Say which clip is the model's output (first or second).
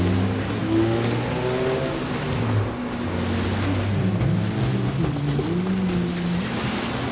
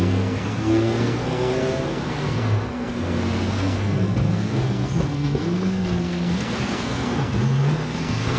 second